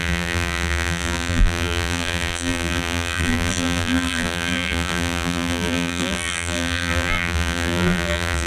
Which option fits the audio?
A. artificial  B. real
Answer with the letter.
A